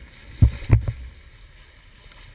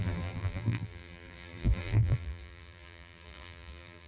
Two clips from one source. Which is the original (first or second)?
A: first